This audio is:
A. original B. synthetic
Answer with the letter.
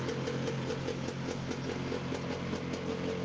A